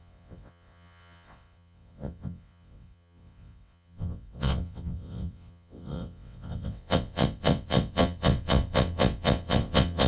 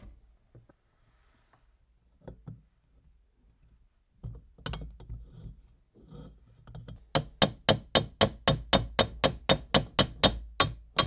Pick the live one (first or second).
second